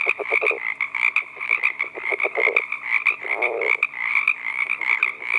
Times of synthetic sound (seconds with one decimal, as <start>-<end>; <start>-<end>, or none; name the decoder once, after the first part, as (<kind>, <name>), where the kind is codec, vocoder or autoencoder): 0.0-5.4 (vocoder, BigVGAN v2)